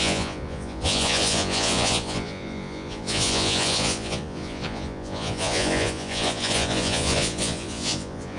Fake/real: fake